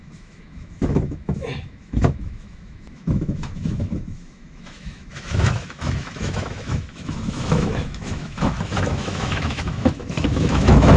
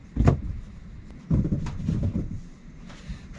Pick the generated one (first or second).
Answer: first